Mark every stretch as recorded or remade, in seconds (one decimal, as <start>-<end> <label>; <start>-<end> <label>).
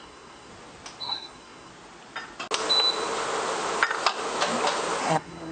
0.0-0.5 remade; 0.5-1.0 recorded; 1.0-1.7 remade; 1.7-5.0 recorded; 5.0-5.5 remade